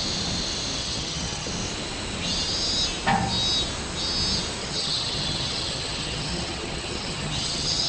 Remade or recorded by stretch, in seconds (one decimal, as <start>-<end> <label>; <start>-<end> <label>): 0.0-0.8 recorded; 0.8-1.5 remade; 1.5-4.6 recorded; 4.6-7.9 remade